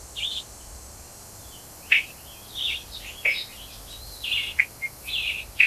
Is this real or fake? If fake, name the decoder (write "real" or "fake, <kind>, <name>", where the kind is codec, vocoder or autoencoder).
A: real